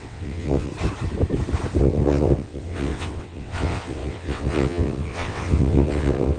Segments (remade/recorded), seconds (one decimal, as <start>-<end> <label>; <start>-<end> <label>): 0.0-0.7 remade; 0.7-1.8 recorded; 1.8-6.4 remade